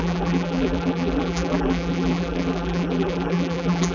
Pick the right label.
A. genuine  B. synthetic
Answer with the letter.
B